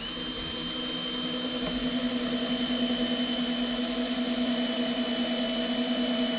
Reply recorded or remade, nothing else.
recorded